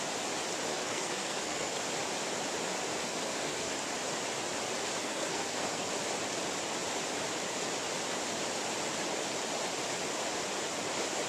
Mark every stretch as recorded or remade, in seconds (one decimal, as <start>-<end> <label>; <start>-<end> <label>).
0.0-0.7 recorded; 0.7-1.8 remade; 1.8-3.0 recorded; 3.0-3.7 remade; 3.7-5.0 recorded; 5.0-5.9 remade; 5.9-11.3 recorded